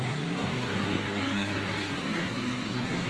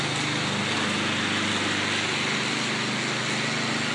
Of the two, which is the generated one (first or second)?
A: first